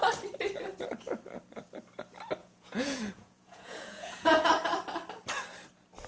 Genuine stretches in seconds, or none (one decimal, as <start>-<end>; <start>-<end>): 0.0-2.4; 4.5-6.1